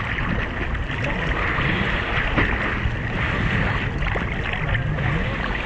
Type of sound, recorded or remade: recorded